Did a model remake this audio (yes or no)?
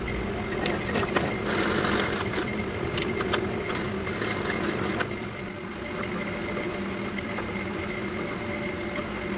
no